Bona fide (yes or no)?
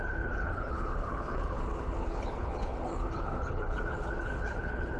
no